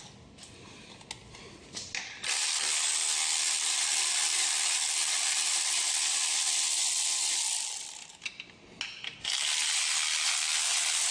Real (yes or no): yes